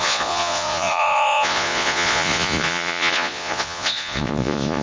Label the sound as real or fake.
fake